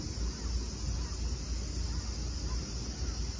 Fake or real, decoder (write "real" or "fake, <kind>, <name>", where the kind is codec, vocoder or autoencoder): real